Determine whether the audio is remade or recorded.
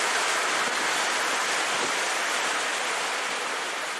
recorded